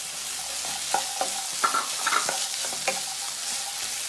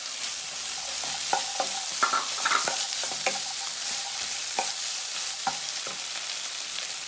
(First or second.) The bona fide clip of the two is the first